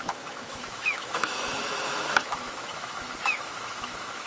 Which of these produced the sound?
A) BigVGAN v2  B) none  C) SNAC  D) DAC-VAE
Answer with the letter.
D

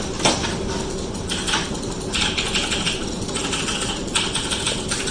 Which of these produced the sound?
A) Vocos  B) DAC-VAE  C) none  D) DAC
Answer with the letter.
C